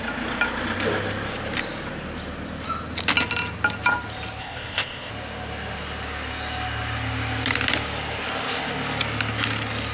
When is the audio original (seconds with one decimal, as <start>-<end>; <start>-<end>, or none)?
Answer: 0.0-4.4; 5.1-9.9